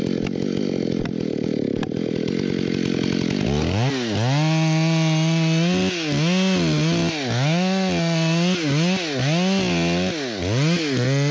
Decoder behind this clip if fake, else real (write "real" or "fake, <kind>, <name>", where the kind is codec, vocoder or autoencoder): real